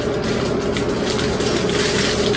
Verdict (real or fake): real